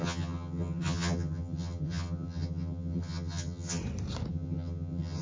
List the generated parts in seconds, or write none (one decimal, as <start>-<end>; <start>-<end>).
0.0-3.8; 4.3-5.2